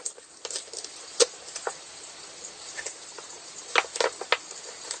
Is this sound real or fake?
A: real